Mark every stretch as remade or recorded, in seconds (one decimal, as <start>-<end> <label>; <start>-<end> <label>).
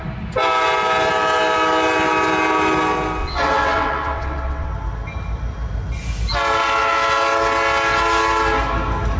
0.0-3.2 recorded; 3.2-4.7 remade; 4.7-9.2 recorded